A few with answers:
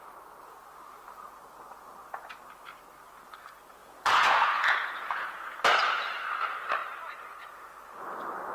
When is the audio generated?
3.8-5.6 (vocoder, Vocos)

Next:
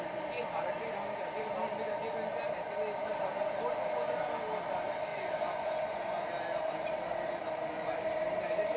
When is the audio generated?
5.1-6.3 (vocoder, Vocos)

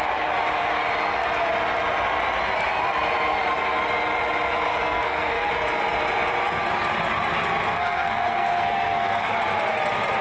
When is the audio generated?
4.7-5.5 (codec, SNAC); 7.7-9.3